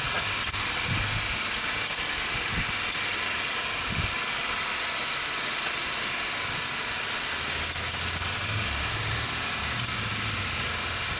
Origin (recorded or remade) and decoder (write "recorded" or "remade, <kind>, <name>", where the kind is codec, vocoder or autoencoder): recorded